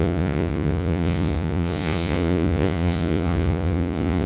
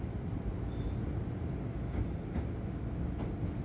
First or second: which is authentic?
second